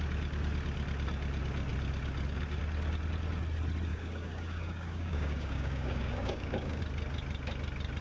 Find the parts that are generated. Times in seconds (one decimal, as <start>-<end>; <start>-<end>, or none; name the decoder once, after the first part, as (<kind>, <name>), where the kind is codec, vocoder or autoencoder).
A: 3.9-6.8 (codec, DAC)